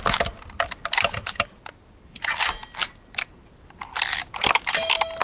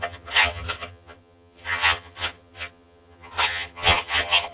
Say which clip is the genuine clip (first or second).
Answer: first